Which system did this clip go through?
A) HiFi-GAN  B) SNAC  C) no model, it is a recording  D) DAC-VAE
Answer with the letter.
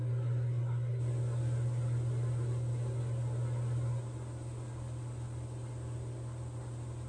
C